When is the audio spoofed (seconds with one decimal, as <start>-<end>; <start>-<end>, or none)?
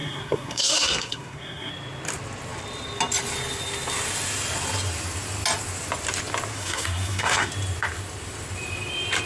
0.0-1.7; 6.5-7.5